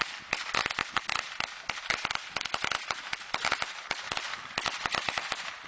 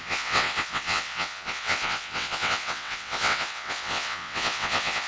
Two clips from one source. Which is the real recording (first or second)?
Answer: first